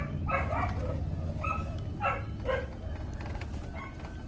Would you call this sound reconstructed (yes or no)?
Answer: no